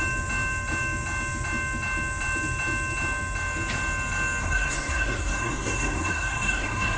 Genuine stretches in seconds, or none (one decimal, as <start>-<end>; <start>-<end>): 0.0-4.4